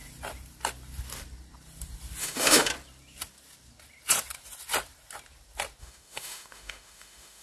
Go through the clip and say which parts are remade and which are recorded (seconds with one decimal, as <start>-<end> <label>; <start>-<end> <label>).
0.0-2.2 recorded; 2.2-2.7 remade; 2.7-5.8 recorded; 5.8-7.4 remade